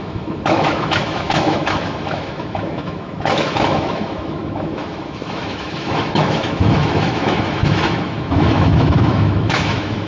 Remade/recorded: remade